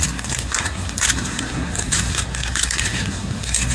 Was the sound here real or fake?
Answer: fake